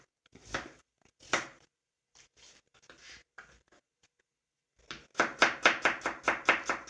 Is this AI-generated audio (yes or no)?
no